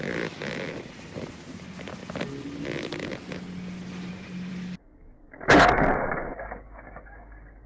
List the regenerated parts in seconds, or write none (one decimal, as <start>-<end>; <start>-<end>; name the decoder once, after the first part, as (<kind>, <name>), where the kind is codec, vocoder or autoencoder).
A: 4.5-7.7 (codec, DAC)